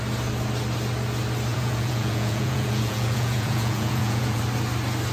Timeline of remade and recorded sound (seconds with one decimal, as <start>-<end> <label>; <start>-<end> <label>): 0.0-1.5 recorded; 1.5-4.4 remade; 4.4-5.1 recorded